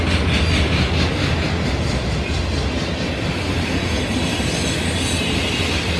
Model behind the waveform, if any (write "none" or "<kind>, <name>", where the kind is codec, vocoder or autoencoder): none